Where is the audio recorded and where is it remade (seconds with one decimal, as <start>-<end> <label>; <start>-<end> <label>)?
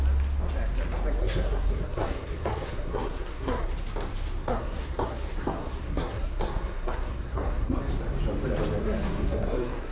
0.0-1.2 recorded; 1.2-3.7 remade; 3.7-4.4 recorded; 4.4-7.8 remade; 7.8-8.8 recorded; 8.8-9.9 remade